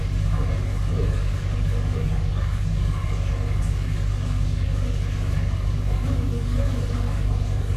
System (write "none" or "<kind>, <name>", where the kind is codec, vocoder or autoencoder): codec, DAC